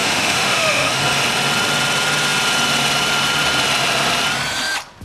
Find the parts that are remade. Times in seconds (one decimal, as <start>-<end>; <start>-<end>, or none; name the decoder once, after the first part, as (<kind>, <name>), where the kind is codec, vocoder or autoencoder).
0.0-1.0 (autoencoder, DAC-VAE)